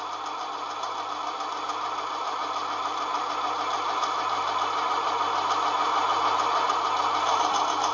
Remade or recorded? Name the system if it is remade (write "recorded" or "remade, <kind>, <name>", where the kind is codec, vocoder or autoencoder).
recorded